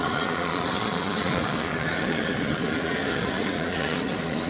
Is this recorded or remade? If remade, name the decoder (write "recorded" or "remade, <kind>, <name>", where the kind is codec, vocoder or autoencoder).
remade, vocoder, Vocos